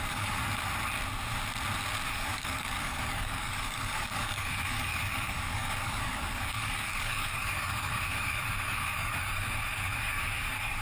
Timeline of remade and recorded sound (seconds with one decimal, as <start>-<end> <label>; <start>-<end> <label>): 0.0-0.4 remade; 0.4-2.1 recorded; 2.1-10.8 remade